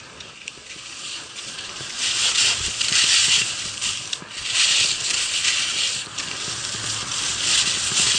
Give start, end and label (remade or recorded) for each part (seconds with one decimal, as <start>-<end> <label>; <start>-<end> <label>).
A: 0.0-1.0 recorded; 1.0-1.6 remade; 1.6-8.2 recorded